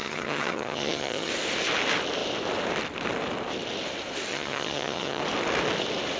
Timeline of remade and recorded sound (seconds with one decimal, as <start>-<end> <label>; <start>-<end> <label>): 0.0-1.3 remade; 1.3-4.3 recorded; 4.3-5.2 remade; 5.2-6.2 recorded

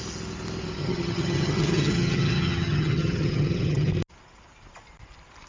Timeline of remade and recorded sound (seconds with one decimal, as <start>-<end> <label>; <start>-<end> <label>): 0.0-0.8 recorded; 0.8-3.9 remade; 3.9-5.5 recorded